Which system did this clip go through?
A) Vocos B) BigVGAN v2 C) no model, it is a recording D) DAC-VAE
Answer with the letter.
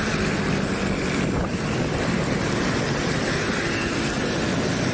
B